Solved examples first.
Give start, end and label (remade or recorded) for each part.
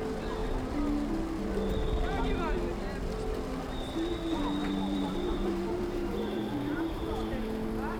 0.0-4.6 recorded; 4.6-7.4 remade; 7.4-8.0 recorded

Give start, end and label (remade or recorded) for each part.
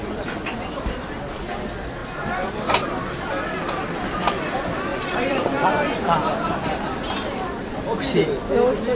0.0-4.9 recorded; 4.9-8.5 remade; 8.5-9.0 recorded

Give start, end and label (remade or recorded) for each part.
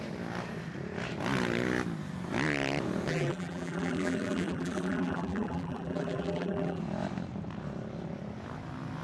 0.0-3.1 recorded; 3.1-6.8 remade; 6.8-9.0 recorded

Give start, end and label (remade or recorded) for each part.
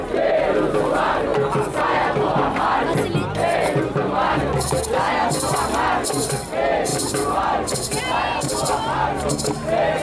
0.0-6.9 recorded; 6.9-8.0 remade; 8.0-10.0 recorded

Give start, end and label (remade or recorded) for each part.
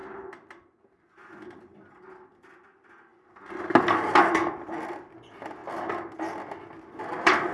0.0-1.0 recorded; 1.0-3.1 remade; 3.1-4.5 recorded; 4.5-5.6 remade; 5.6-7.0 recorded; 7.0-7.5 remade